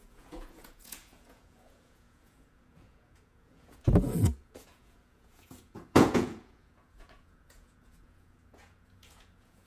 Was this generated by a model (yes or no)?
yes